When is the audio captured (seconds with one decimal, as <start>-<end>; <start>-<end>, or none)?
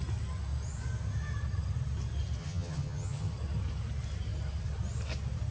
0.0-2.4; 3.3-5.5